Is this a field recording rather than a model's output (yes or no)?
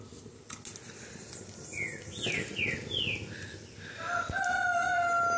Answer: yes